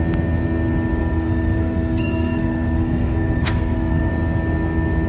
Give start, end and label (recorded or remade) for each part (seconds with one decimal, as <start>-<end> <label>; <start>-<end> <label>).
0.0-1.0 recorded; 1.0-4.1 remade; 4.1-5.1 recorded